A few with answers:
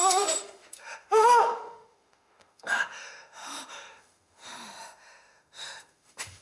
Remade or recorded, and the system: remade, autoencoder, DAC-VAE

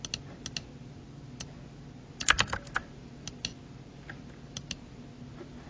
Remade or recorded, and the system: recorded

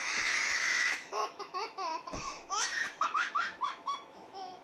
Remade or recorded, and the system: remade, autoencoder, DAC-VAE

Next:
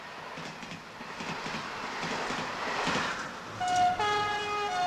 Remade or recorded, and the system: recorded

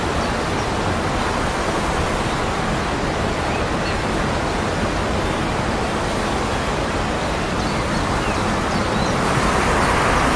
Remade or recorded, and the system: recorded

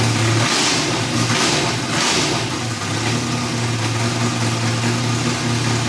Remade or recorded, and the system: recorded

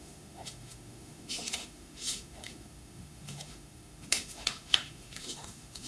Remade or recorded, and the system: remade, autoencoder, DAC-VAE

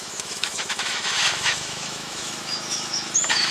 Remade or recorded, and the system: remade, autoencoder, DAC-VAE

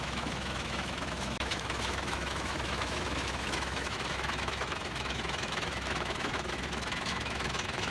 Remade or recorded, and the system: remade, autoencoder, DAC-VAE